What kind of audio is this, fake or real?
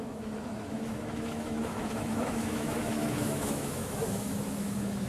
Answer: fake